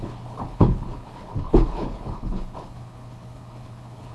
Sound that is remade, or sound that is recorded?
remade